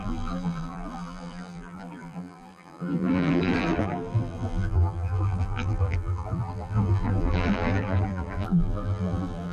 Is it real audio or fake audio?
fake